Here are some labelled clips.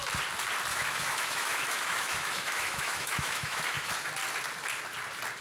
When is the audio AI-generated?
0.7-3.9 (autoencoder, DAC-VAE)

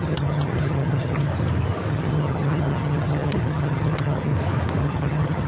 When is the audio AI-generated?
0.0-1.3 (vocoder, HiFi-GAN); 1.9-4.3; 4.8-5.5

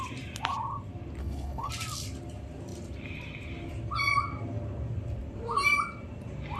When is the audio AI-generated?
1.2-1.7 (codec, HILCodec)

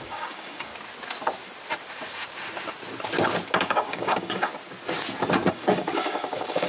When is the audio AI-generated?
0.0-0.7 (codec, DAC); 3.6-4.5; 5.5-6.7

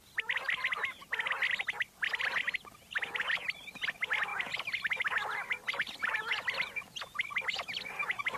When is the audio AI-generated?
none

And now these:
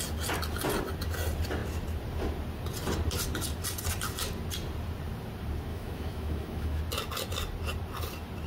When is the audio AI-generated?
5.7-6.8 (autoencoder, DAC-VAE)

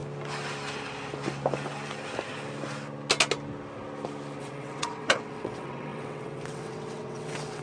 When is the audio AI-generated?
4.4-7.6 (vocoder, WaveNeXt)